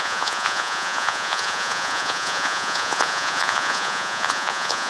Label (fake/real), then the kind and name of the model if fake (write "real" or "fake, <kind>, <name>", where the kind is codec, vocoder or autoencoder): fake, vocoder, Vocos